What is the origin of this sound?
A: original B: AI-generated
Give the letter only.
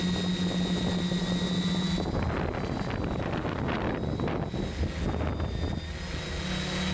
A